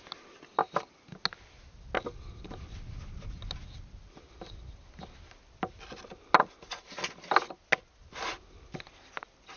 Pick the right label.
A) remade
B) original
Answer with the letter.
B